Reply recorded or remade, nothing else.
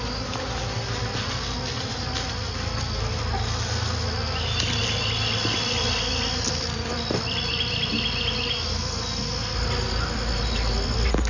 recorded